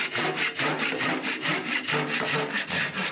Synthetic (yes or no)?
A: no